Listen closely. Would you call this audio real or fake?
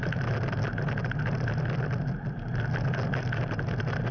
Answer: real